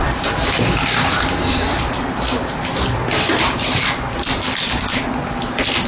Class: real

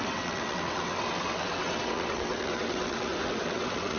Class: fake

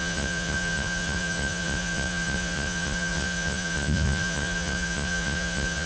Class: fake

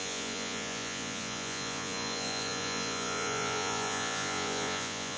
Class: fake